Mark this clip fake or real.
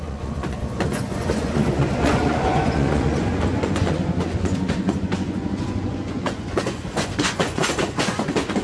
fake